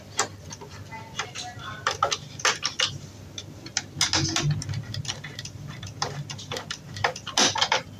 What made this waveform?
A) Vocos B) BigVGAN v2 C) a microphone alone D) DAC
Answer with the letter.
C